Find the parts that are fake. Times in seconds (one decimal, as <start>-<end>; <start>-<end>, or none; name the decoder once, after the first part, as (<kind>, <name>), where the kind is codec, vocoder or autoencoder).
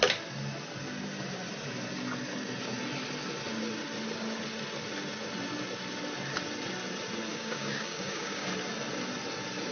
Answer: 7.3-8.5 (codec, DAC)